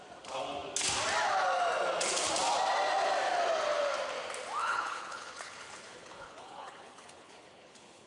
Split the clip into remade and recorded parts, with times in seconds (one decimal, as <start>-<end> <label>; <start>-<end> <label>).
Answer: 0.0-4.6 recorded; 4.6-8.1 remade